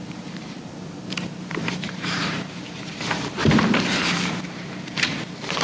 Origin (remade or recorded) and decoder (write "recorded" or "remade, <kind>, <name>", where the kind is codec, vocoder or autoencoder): remade, vocoder, BigVGAN v2